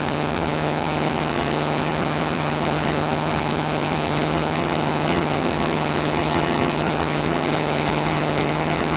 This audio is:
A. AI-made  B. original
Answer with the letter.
A